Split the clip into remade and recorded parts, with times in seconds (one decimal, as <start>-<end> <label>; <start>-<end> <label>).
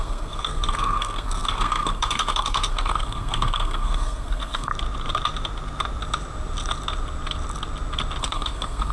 0.0-4.7 remade; 4.7-8.2 recorded; 8.2-8.9 remade